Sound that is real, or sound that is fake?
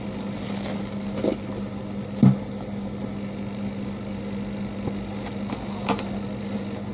real